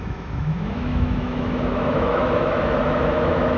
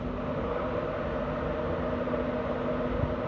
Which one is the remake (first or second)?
first